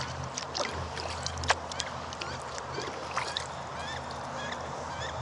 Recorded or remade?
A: recorded